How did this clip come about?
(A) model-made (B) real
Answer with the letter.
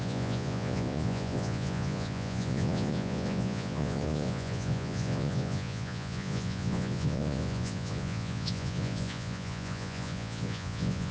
A